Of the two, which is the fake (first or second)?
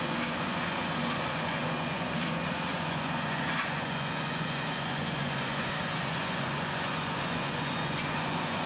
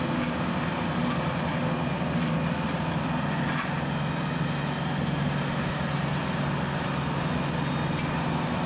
first